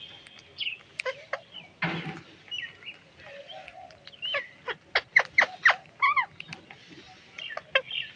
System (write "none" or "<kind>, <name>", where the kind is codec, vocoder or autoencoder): none